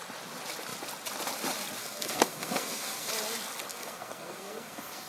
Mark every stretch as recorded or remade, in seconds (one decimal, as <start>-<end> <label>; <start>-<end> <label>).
0.0-1.8 recorded; 1.8-3.1 remade; 3.1-3.7 recorded; 3.7-5.1 remade